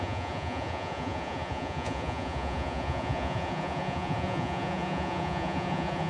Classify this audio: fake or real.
fake